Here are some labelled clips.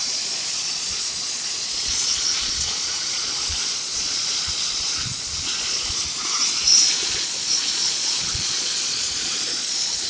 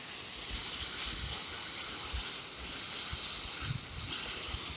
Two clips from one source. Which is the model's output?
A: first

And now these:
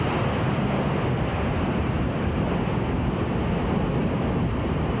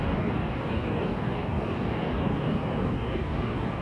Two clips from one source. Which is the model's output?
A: second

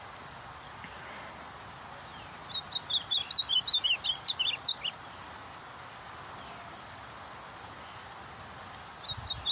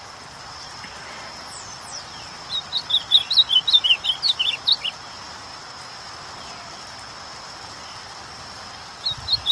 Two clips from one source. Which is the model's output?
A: second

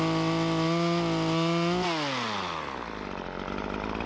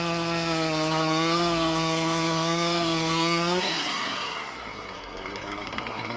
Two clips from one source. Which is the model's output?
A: second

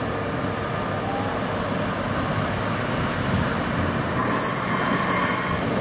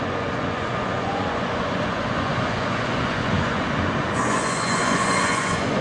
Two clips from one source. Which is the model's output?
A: second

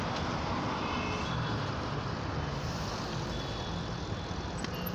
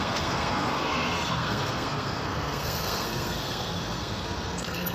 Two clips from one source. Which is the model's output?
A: second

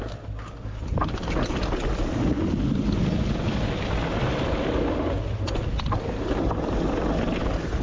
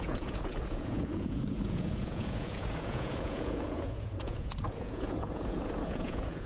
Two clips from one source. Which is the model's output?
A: second